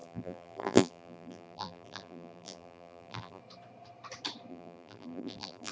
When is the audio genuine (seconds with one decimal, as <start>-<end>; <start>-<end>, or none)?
3.4-4.5